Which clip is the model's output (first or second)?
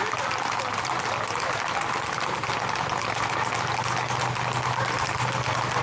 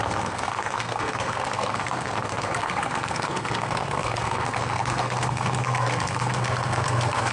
second